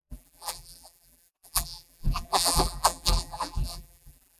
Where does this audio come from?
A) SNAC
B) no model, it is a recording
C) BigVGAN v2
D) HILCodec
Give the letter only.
C